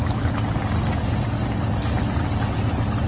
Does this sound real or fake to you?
real